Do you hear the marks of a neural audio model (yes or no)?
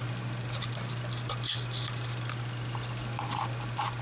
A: no